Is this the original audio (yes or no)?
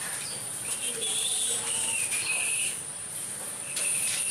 no